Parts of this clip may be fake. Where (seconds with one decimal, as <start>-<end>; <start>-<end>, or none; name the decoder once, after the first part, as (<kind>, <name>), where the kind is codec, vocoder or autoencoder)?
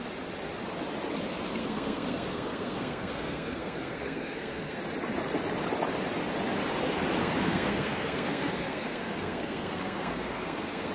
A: 1.6-4.8 (codec, SNAC); 7.2-10.9